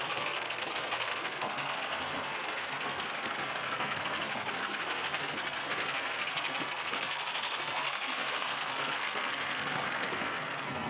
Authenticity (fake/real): fake